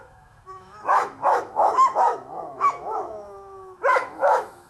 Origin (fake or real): fake